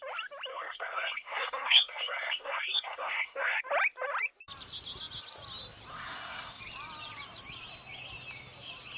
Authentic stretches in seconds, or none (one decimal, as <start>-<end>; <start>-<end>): 0.0-0.5; 3.6-5.9; 6.6-9.0